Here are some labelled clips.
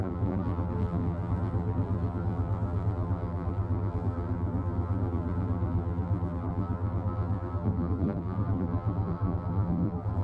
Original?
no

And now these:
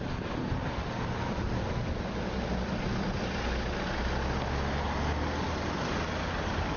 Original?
yes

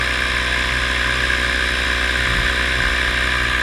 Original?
yes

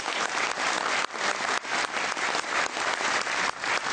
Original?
yes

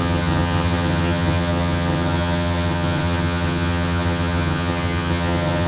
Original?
no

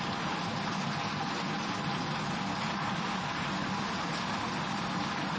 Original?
yes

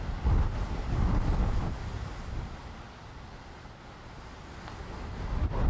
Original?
yes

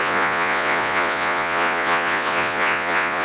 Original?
no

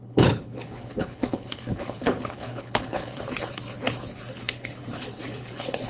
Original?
no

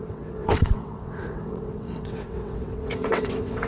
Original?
no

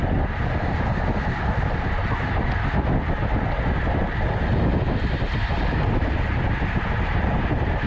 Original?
yes